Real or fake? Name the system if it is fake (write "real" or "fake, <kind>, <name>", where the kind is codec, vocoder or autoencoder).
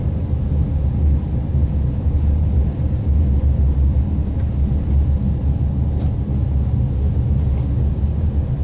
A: real